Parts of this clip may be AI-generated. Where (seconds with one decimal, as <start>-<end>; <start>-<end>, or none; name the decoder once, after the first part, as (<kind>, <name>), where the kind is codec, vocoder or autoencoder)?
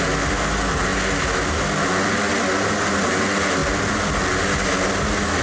none